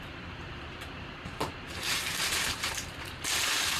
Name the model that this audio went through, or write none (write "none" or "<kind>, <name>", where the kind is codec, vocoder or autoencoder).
vocoder, BigVGAN v2